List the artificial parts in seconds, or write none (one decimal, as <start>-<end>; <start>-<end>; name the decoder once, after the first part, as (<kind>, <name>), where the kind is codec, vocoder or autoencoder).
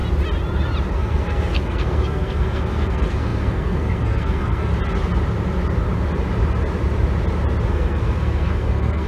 0.9-4.7 (codec, SNAC); 7.7-9.1